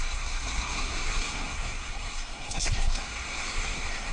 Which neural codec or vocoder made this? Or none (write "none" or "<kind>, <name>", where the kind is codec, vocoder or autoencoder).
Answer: codec, SNAC